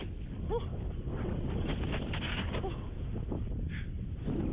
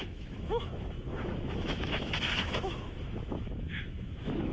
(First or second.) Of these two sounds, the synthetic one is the second